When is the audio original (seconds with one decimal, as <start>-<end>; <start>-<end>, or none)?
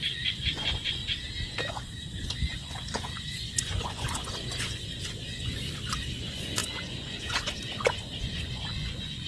1.0-1.7